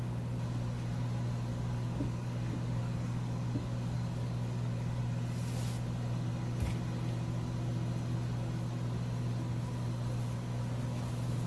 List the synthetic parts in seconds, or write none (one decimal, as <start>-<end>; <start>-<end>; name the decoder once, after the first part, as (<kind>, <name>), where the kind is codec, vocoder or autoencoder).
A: 1.5-5.0 (codec, DAC)